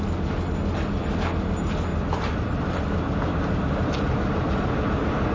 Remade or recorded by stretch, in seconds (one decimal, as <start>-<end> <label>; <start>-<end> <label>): 0.0-1.9 recorded; 1.9-5.3 remade